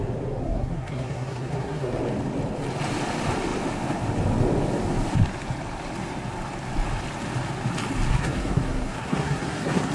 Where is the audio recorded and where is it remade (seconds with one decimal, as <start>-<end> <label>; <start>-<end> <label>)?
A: 0.0-0.4 recorded; 0.4-2.0 remade; 2.0-8.1 recorded; 8.1-9.9 remade